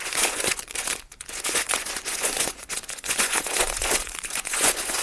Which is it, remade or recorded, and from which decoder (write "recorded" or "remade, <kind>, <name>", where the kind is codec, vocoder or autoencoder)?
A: remade, vocoder, Vocos